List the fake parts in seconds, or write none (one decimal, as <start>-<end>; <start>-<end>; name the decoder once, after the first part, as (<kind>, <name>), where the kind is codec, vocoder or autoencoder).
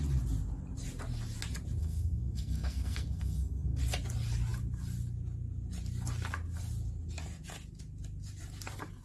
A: 1.8-3.8 (codec, SNAC)